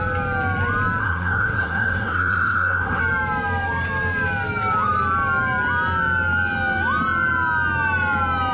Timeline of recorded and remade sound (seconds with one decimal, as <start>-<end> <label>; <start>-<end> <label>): 0.0-1.0 recorded; 1.0-3.0 remade; 3.0-8.5 recorded